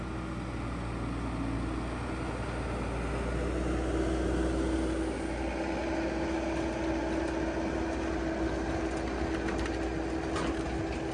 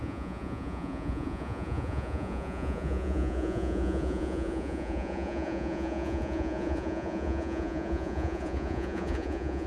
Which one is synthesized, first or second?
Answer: second